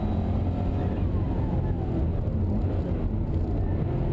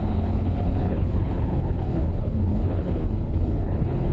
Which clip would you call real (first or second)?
first